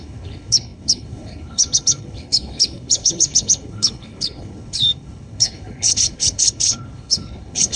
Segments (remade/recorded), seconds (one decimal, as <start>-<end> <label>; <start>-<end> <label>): 0.0-7.8 remade